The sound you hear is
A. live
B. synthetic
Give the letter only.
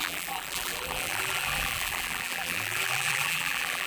B